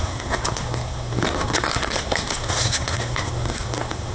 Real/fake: fake